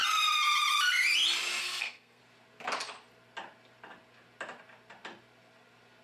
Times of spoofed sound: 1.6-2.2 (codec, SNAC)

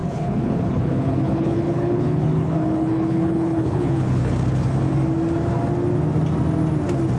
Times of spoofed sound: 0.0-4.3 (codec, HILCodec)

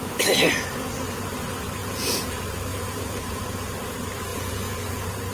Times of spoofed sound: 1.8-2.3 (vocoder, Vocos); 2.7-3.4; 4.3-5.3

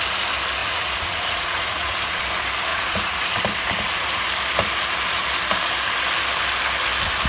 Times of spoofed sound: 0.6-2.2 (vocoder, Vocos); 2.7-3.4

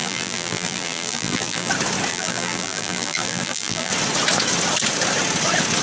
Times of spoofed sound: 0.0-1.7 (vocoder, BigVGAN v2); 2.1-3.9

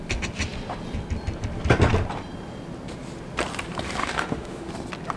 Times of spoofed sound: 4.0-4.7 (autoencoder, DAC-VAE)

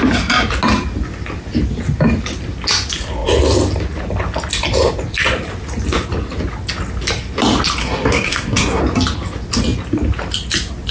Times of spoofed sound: 7.8-8.8 (codec, SNAC)